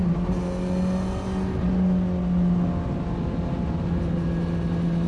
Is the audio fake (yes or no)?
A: no